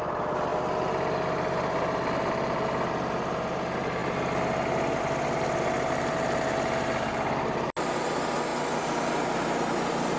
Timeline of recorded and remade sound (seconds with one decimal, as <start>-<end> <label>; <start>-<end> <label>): 0.0-10.2 recorded